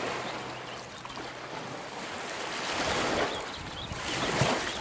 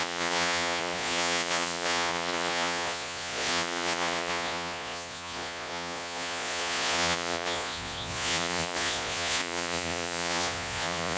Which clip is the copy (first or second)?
second